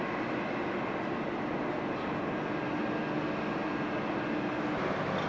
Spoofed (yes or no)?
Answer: no